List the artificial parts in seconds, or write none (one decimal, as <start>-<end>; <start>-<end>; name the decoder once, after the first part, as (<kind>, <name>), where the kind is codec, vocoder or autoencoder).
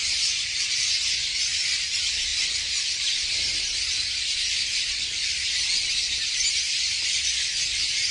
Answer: 0.0-0.6 (vocoder, BigVGAN v2); 2.3-5.9